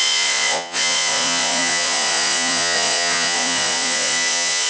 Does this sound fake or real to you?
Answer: fake